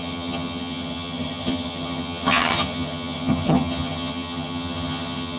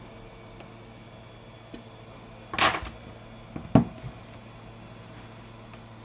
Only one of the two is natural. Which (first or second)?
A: second